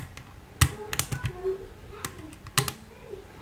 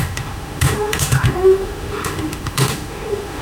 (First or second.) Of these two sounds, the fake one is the second